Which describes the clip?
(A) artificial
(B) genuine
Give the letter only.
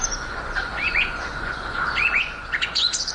A